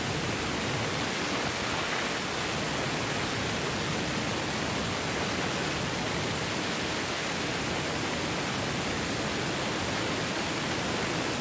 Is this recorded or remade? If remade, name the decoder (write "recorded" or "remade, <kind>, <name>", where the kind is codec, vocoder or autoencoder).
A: recorded